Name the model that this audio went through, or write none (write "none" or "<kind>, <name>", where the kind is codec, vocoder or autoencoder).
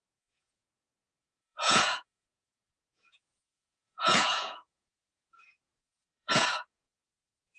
vocoder, Vocos